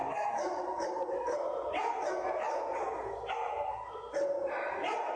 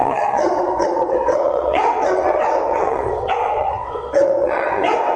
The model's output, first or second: second